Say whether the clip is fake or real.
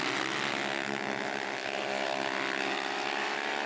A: real